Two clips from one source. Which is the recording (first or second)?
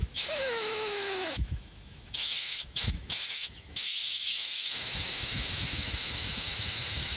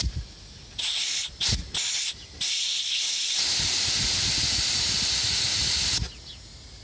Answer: second